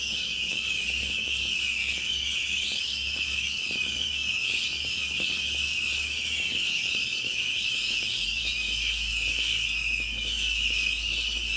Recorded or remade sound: remade